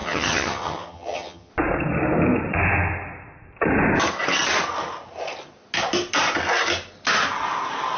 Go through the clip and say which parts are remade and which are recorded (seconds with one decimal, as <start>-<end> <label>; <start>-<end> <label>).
0.0-1.5 remade; 1.5-8.0 recorded